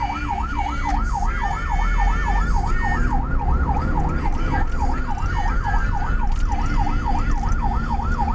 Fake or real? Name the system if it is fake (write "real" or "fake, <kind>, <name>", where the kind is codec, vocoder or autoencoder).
real